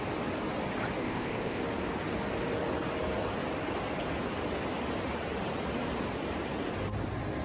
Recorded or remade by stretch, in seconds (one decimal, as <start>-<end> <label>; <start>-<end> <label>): 0.0-1.0 recorded; 1.0-1.6 remade; 1.6-7.4 recorded